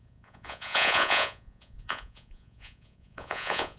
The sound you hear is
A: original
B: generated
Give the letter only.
B